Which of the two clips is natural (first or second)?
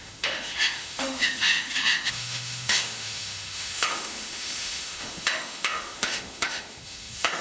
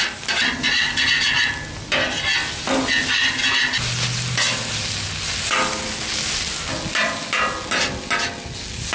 second